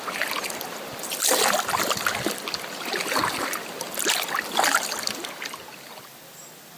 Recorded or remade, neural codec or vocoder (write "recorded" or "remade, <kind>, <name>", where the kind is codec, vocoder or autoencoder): recorded